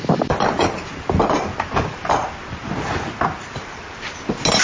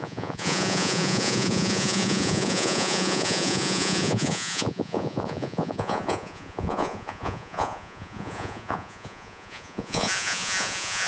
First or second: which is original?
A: first